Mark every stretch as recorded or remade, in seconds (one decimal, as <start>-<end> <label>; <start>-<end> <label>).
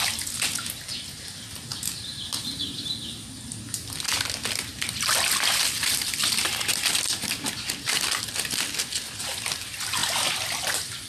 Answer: 0.0-11.1 recorded